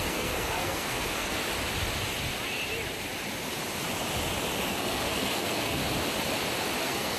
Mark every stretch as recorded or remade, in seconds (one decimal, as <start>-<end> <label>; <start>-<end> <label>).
0.0-1.4 remade; 1.4-4.7 recorded; 4.7-5.8 remade; 5.8-6.8 recorded; 6.8-7.2 remade